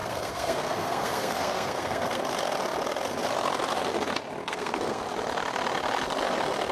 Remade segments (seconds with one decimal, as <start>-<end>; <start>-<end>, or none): 0.0-2.2; 4.4-5.0